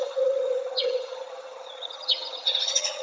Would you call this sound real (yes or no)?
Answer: no